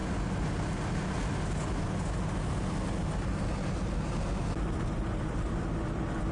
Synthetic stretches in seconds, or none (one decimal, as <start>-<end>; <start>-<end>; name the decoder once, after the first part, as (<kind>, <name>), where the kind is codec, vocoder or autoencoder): none